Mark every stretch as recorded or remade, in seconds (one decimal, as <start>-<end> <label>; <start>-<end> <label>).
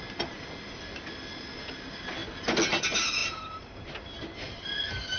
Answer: 0.0-3.2 recorded; 3.2-3.9 remade; 3.9-5.2 recorded